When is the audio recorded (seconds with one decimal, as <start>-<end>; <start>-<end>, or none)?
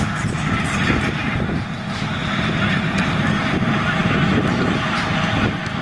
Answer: 0.0-5.8